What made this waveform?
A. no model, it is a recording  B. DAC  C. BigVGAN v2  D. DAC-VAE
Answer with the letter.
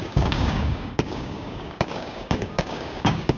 B